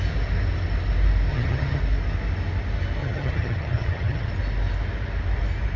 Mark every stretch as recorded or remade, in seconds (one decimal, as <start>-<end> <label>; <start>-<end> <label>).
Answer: 0.0-1.3 recorded; 1.3-1.8 remade; 1.8-3.0 recorded; 3.0-4.3 remade; 4.3-5.8 recorded